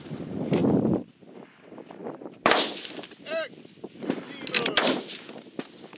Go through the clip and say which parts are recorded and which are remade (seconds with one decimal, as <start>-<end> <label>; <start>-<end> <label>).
0.0-6.0 recorded